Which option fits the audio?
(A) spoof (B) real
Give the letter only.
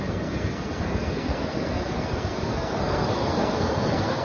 A